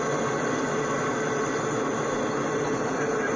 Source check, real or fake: real